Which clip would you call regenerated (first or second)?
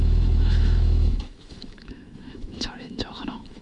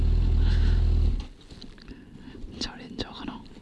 first